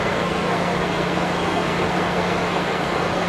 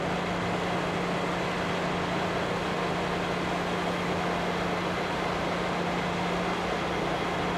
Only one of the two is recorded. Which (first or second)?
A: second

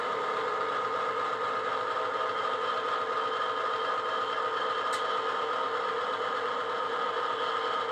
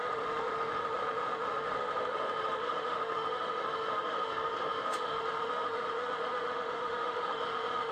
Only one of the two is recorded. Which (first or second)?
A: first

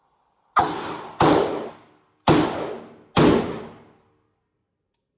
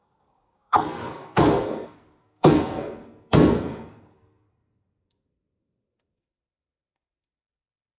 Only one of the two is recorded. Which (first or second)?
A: first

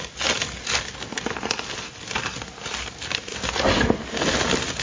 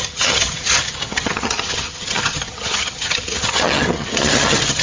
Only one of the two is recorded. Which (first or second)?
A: first